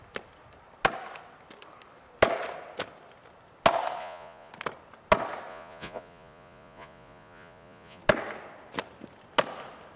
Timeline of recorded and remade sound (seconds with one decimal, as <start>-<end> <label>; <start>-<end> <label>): 0.0-4.0 recorded; 4.0-4.5 remade; 4.5-5.5 recorded; 5.5-8.0 remade; 8.0-10.0 recorded